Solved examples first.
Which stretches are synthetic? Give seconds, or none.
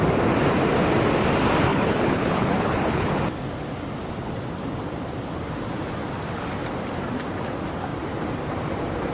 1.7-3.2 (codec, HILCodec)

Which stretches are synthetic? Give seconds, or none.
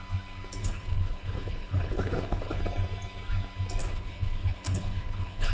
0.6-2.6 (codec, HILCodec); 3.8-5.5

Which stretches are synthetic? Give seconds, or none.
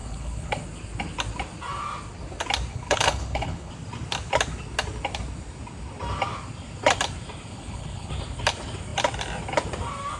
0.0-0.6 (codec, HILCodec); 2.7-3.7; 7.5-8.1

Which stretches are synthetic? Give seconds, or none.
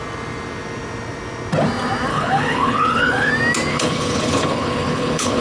2.1-3.3 (codec, HILCodec); 3.7-5.4